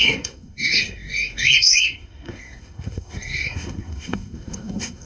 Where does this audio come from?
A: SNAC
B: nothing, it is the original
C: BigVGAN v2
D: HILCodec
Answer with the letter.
A